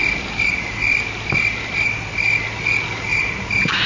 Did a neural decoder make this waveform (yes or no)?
no